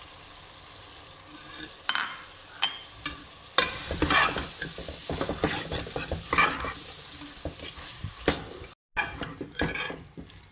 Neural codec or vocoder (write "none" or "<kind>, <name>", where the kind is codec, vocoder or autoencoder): none